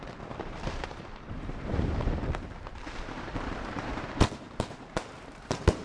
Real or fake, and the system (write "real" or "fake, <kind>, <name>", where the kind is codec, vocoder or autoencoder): fake, vocoder, BigVGAN v2